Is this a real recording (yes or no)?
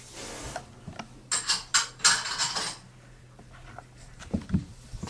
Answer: yes